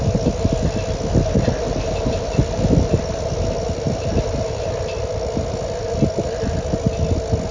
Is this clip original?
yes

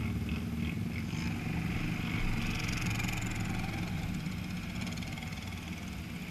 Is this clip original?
yes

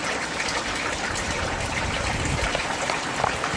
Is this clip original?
no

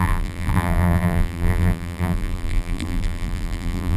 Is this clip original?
no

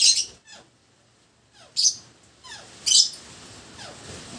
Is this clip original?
yes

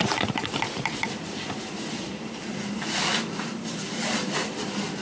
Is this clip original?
no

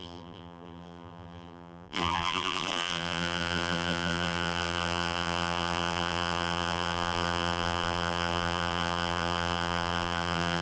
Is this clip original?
no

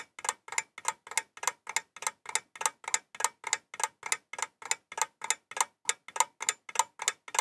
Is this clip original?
yes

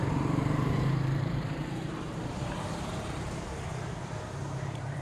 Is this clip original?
no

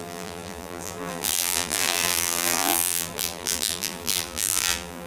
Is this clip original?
no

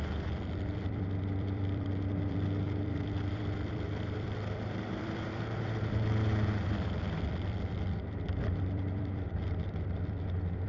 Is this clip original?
no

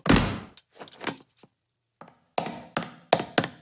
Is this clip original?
yes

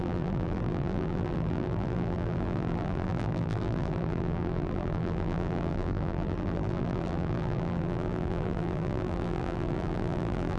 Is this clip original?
no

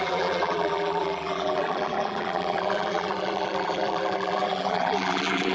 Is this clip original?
no